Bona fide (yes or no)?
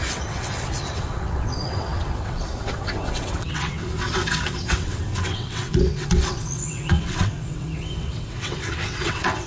no